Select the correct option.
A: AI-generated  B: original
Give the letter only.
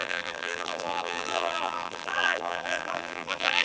A